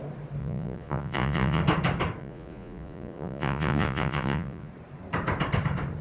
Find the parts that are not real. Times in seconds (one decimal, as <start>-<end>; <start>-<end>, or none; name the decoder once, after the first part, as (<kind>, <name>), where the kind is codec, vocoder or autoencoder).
0.4-1.6 (vocoder, Vocos); 2.2-4.7